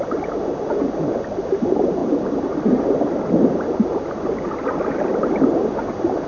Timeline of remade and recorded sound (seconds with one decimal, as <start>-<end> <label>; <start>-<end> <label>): 0.0-2.0 recorded; 2.0-5.6 remade; 5.6-6.3 recorded